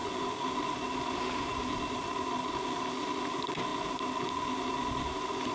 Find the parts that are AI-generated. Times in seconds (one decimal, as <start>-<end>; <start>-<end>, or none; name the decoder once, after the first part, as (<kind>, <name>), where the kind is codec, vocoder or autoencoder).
none